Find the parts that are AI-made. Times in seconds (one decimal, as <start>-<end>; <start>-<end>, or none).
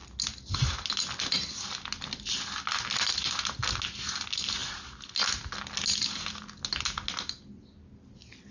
none